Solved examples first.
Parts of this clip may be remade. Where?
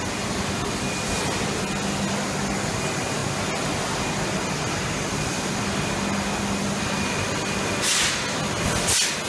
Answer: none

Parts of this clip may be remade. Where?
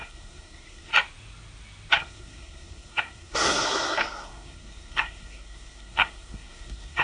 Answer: 0.0-0.9 (codec, SNAC); 1.9-7.0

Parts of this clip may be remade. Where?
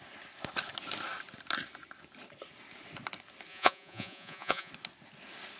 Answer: 3.5-4.7 (vocoder, Vocos)